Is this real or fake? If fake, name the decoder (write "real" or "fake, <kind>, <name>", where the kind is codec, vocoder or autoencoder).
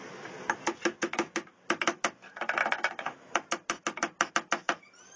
real